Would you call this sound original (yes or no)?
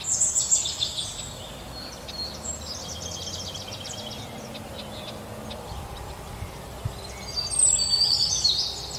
yes